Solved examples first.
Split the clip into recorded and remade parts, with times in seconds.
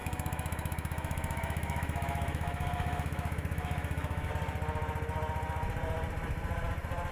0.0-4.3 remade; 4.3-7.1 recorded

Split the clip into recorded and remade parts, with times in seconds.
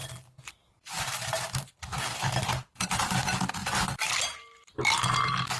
0.0-5.6 recorded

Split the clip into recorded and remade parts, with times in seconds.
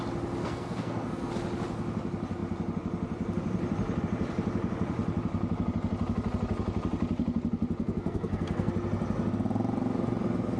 0.0-0.4 recorded; 0.4-1.3 remade; 1.3-7.8 recorded; 7.8-8.7 remade; 8.7-10.6 recorded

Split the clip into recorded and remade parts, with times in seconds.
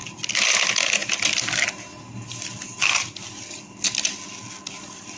0.0-5.2 recorded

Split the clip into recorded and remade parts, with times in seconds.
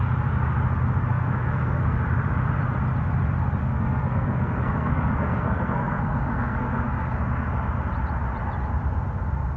0.0-1.1 recorded; 1.1-2.0 remade; 2.0-3.6 recorded; 3.6-7.2 remade; 7.2-9.6 recorded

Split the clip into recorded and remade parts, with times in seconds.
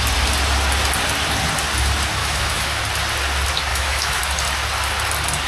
0.0-2.2 recorded; 2.2-2.8 remade; 2.8-3.7 recorded; 3.7-4.2 remade; 4.2-5.5 recorded